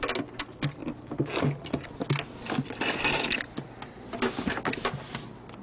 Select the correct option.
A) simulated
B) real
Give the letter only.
B